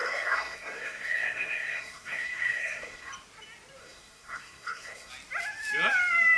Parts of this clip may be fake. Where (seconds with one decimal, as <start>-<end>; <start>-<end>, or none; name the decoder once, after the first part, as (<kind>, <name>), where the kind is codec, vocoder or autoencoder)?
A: 0.0-3.1 (codec, SNAC); 3.8-5.1